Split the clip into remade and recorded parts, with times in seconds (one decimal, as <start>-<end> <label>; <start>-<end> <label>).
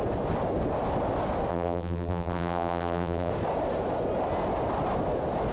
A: 0.0-1.5 recorded; 1.5-3.3 remade; 3.3-5.5 recorded